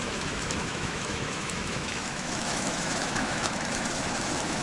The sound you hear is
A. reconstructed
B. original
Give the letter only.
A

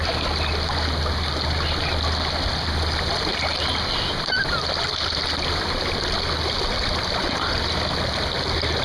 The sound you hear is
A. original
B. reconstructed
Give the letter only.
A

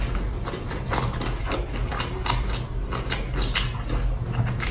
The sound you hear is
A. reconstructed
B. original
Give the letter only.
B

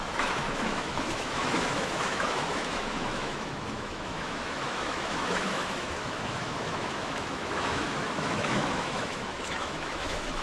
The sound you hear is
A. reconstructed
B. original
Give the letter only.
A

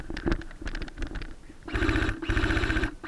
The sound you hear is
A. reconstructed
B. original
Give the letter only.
B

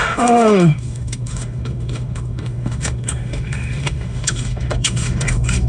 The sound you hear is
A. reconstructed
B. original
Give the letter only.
A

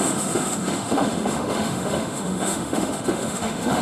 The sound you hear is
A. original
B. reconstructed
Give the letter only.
B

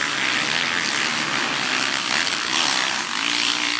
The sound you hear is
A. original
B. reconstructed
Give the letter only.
A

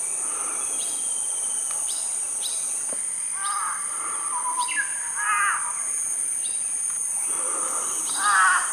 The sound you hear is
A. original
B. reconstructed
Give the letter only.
A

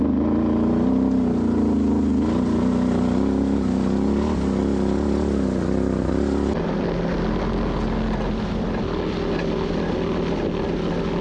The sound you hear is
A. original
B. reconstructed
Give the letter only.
A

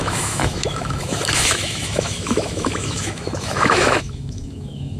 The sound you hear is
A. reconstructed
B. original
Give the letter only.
A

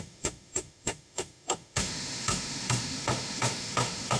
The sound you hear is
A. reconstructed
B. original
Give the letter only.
A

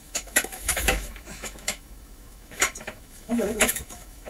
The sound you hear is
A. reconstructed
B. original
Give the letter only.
A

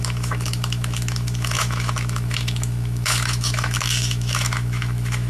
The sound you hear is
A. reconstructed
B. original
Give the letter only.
A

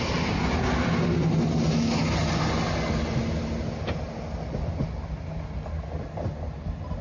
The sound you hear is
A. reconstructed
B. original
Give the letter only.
B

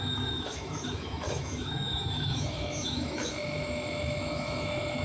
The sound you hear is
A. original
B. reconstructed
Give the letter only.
B